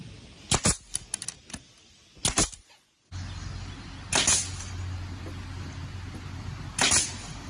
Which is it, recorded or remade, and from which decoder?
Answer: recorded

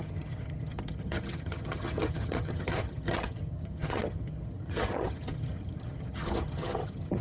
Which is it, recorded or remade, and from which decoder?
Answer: remade, vocoder, HiFi-GAN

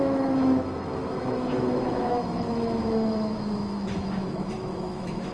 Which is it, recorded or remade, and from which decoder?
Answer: remade, autoencoder, DAC-VAE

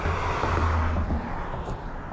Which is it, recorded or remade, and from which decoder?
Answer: recorded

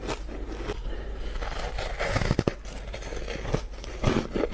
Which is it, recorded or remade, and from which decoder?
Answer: recorded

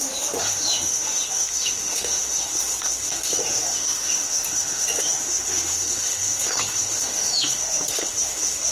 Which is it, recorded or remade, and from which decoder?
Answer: remade, autoencoder, DAC-VAE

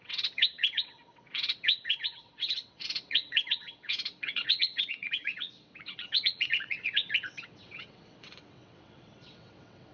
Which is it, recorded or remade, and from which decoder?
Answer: remade, vocoder, WaveNeXt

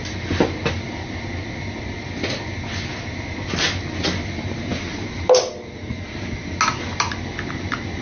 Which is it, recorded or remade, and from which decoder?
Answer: recorded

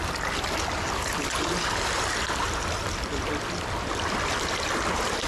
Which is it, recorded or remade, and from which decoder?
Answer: recorded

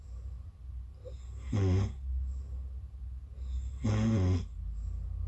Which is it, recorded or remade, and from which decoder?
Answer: recorded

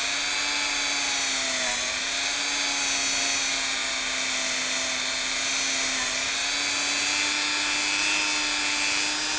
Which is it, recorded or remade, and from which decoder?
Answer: recorded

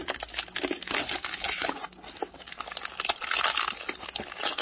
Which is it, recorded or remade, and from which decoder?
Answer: recorded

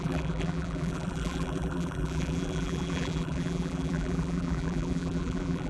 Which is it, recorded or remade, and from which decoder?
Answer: remade, vocoder, BigVGAN v2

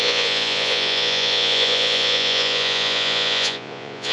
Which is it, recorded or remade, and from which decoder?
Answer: remade, vocoder, Vocos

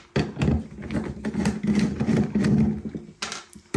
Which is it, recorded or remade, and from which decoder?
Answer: recorded